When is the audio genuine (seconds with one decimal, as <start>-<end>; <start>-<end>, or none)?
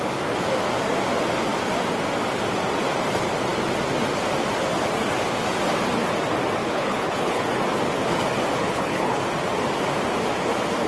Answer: 0.0-6.6; 7.4-8.6; 9.2-10.9